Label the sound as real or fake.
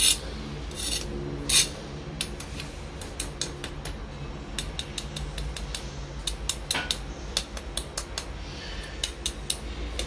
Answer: real